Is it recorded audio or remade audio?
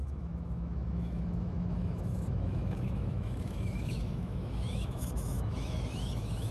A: remade